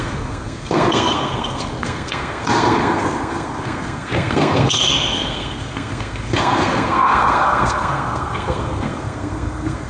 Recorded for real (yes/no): no